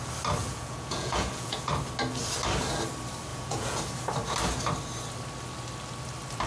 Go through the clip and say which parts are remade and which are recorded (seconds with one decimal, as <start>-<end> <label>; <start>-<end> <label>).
0.0-0.4 recorded; 0.4-1.7 remade; 1.7-3.3 recorded; 3.3-3.8 remade; 3.8-6.5 recorded